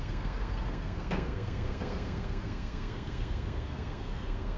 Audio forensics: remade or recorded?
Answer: remade